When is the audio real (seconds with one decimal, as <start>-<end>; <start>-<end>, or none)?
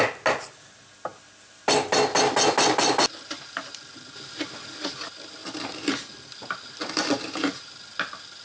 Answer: 0.0-8.4